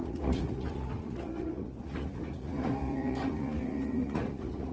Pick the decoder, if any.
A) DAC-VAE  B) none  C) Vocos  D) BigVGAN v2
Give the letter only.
C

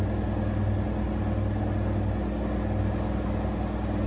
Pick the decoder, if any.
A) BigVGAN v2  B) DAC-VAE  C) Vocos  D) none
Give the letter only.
D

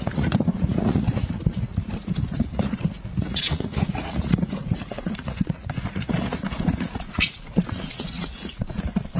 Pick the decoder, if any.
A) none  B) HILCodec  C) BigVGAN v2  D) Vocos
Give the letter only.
D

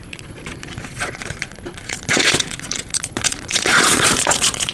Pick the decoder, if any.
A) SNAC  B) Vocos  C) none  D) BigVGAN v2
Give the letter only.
B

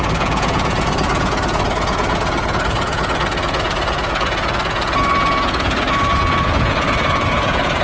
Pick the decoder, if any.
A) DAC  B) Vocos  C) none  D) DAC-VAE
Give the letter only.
B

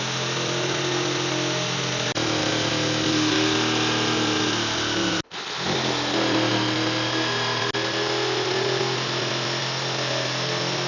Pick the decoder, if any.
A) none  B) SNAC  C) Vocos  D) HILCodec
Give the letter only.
A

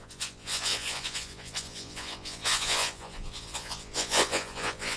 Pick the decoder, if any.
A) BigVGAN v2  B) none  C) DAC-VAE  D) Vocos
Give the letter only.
D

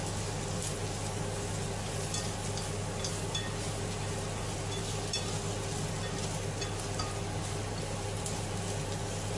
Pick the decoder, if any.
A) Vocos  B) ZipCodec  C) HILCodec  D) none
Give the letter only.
D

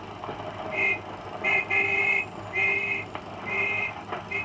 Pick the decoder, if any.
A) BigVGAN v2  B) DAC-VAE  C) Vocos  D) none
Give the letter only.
D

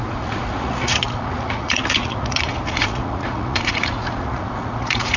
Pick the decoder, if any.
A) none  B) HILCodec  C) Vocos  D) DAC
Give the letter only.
C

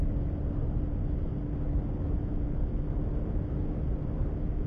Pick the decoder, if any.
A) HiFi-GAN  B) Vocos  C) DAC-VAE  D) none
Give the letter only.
D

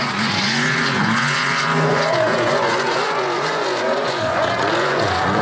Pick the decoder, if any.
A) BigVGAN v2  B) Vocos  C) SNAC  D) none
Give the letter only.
B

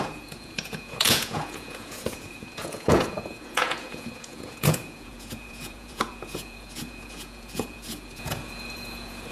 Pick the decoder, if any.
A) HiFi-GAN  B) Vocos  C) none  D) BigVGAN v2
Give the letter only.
B